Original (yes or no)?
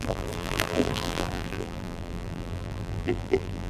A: no